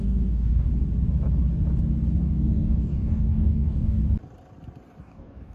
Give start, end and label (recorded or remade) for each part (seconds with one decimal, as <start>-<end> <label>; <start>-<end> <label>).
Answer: 0.0-0.7 remade; 0.7-2.2 recorded; 2.2-4.0 remade; 4.0-5.0 recorded; 5.0-5.5 remade